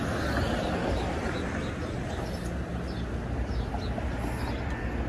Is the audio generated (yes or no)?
no